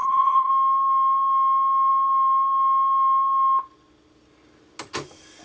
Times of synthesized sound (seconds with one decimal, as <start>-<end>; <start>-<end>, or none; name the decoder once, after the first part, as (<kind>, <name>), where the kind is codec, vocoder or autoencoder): 0.0-0.5 (codec, HILCodec)